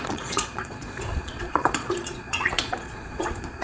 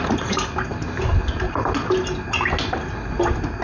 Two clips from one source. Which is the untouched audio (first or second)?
second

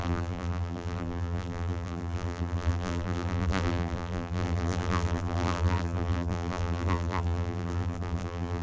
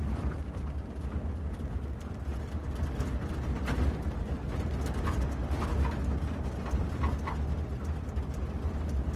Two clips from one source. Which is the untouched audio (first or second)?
second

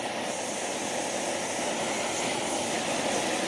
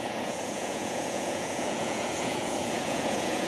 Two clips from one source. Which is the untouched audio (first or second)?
first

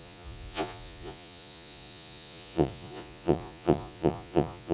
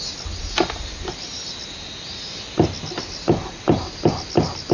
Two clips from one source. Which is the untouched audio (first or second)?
second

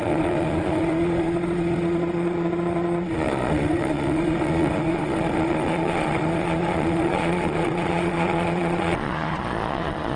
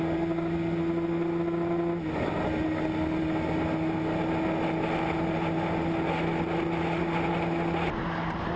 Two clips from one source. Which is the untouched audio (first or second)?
second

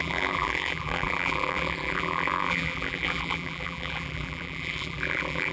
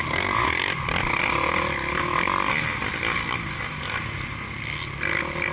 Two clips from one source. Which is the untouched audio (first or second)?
second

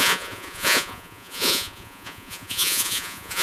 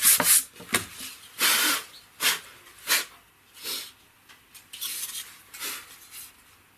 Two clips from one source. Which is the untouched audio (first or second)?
second